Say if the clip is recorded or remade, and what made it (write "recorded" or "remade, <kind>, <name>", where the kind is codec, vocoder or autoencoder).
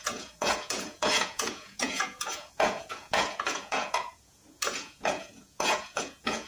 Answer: remade, vocoder, Vocos